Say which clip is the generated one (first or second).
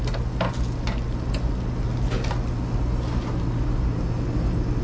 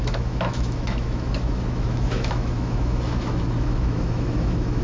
second